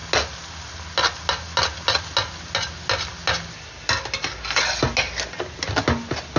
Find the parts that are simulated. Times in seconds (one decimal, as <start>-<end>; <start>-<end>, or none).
none